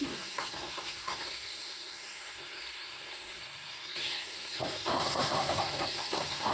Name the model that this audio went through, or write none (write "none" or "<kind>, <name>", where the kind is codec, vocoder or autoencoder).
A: codec, SNAC